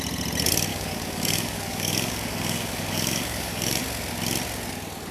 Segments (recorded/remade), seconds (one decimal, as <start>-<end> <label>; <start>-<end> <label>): 0.0-0.7 recorded; 0.7-3.8 remade; 3.8-5.1 recorded